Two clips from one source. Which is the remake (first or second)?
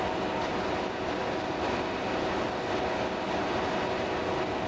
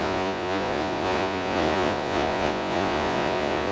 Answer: second